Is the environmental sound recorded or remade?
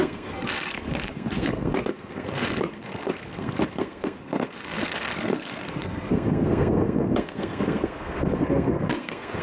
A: remade